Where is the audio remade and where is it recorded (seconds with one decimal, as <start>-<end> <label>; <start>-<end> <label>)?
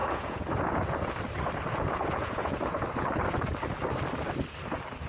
0.0-1.1 remade; 1.1-1.7 recorded; 1.7-2.8 remade; 2.8-5.1 recorded